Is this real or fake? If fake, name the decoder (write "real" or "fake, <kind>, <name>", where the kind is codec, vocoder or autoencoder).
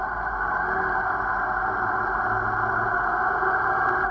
real